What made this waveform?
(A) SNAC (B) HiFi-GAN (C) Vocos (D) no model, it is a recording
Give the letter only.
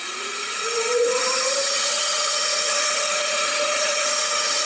C